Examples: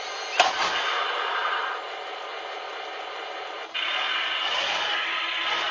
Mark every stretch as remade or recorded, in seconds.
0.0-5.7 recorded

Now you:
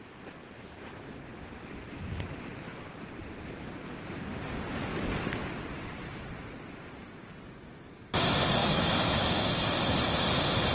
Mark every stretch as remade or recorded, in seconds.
0.0-8.6 recorded; 8.6-9.6 remade; 9.6-10.7 recorded

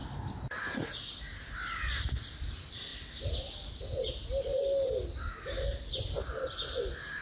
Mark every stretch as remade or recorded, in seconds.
0.0-7.2 recorded

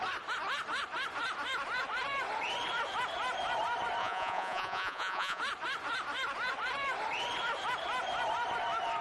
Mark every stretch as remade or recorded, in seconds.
0.0-4.0 recorded; 4.0-5.4 remade; 5.4-9.0 recorded